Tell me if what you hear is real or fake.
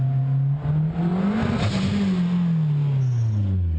real